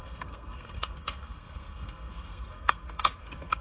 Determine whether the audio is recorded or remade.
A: remade